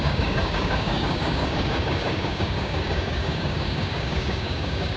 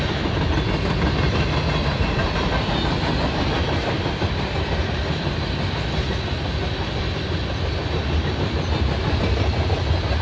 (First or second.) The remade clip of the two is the first